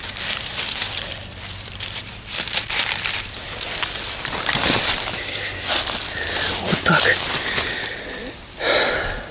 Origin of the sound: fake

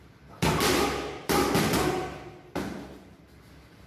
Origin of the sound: real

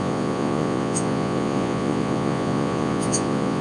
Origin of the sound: fake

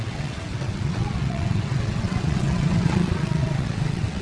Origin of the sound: fake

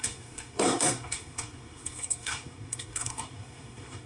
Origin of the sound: fake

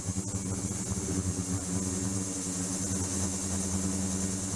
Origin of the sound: real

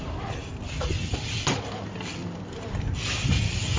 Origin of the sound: real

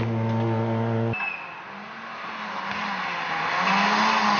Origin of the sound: real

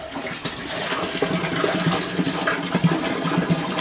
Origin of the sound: real